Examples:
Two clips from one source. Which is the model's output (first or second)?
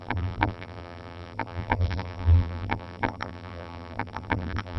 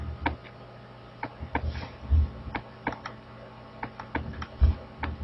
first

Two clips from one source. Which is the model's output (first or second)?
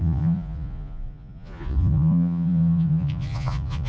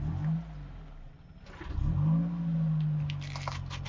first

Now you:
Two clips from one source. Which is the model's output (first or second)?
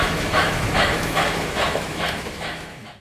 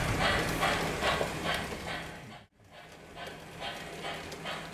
first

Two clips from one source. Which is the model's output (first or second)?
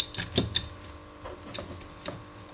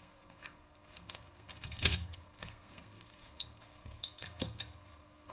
second